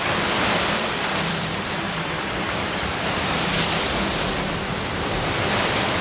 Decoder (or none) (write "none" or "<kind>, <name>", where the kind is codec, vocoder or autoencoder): vocoder, BigVGAN v2